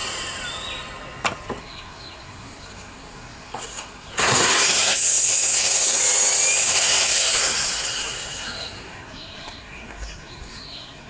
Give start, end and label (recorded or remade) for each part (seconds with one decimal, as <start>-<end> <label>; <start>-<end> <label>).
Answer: 0.0-1.6 recorded; 1.6-6.0 remade; 6.0-6.6 recorded; 6.6-11.1 remade